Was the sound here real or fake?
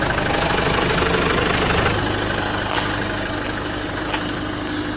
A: real